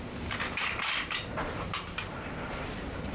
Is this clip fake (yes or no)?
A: no